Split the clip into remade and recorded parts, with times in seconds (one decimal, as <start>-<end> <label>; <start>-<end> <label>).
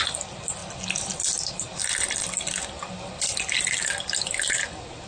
0.0-5.1 recorded